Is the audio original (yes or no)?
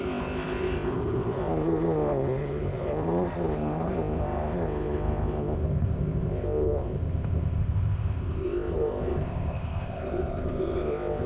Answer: no